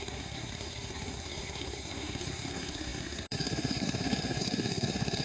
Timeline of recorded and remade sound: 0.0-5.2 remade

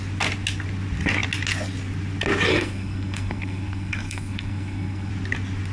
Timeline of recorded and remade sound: 0.0-2.5 recorded; 2.5-5.1 remade; 5.1-5.7 recorded

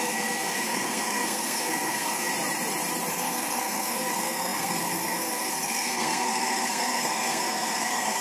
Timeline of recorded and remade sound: 0.0-2.3 remade; 2.3-3.1 recorded; 3.1-8.2 remade

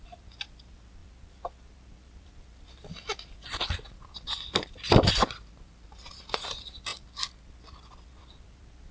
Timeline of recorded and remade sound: 0.0-1.0 recorded; 1.0-5.6 remade; 5.6-8.9 recorded

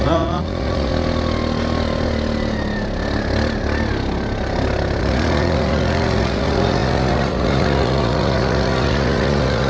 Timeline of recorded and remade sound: 0.0-0.9 remade; 0.9-5.0 recorded; 5.0-9.7 remade

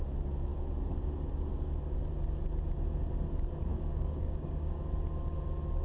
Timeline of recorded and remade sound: 0.0-3.7 recorded; 3.7-4.8 remade; 4.8-5.8 recorded

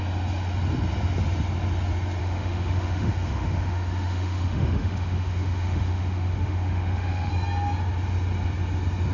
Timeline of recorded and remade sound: 0.0-2.2 recorded; 2.2-7.3 remade; 7.3-9.1 recorded

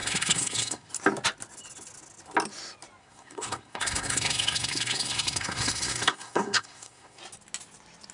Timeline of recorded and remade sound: 0.0-0.9 remade; 0.9-3.0 recorded; 3.0-7.2 remade; 7.2-8.1 recorded